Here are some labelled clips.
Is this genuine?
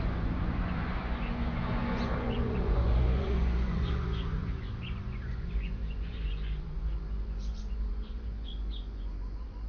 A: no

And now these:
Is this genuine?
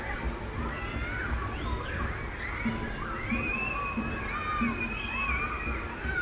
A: yes